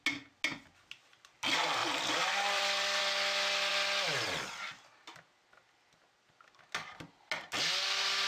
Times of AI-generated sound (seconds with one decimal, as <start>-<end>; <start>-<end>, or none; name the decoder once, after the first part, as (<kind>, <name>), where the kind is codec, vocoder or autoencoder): 1.8-3.0 (vocoder, BigVGAN v2)